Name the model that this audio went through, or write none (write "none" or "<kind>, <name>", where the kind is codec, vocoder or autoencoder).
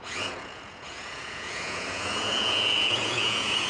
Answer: vocoder, Vocos